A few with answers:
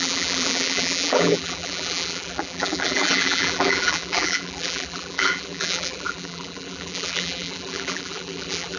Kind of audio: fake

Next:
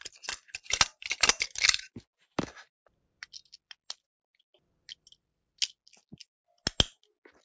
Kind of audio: real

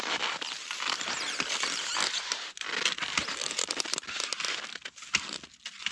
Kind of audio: real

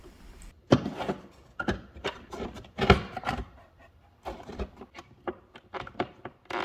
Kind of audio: fake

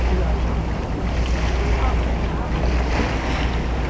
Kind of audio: real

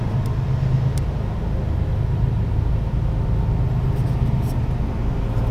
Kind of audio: real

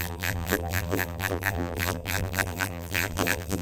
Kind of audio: fake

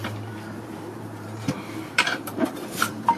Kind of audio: fake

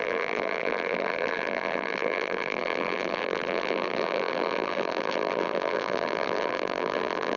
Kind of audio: fake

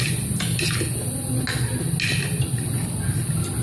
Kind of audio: real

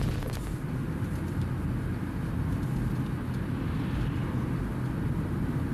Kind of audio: real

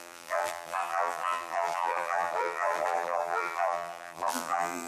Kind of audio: fake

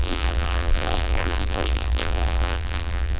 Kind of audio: fake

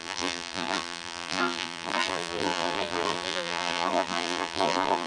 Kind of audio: fake